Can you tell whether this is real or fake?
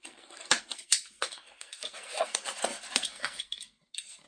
fake